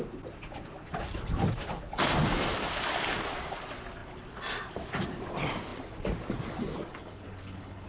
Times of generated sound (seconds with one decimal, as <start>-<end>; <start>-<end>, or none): 6.9-7.9